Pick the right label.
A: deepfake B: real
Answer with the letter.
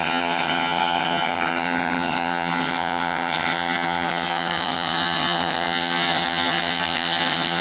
A